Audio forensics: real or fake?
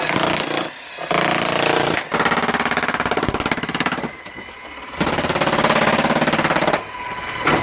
real